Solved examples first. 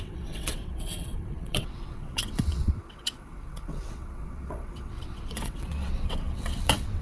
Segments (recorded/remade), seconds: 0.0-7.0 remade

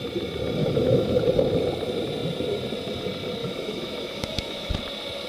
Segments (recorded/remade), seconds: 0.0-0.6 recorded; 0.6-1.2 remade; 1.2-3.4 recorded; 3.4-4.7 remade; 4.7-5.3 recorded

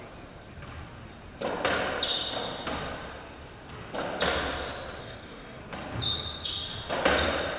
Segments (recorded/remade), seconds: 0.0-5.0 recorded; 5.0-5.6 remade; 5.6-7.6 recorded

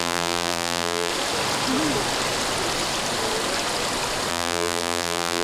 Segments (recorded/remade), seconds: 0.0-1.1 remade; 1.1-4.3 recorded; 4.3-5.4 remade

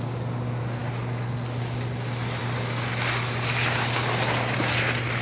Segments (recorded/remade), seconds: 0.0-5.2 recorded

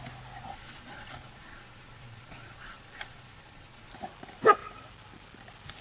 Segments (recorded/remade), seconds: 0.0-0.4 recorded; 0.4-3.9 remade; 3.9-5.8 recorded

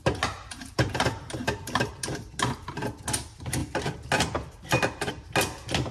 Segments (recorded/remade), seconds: 0.0-0.5 recorded; 0.5-1.9 remade; 1.9-5.9 recorded